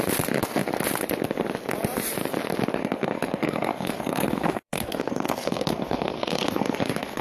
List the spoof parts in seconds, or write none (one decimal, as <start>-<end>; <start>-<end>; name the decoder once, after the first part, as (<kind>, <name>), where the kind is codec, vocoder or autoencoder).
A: 2.8-7.2 (codec, SNAC)